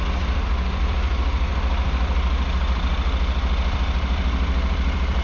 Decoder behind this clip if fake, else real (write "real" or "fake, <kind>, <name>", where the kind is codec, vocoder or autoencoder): fake, vocoder, BigVGAN v2